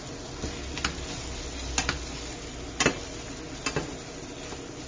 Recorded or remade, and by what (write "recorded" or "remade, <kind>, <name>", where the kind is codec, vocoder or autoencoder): recorded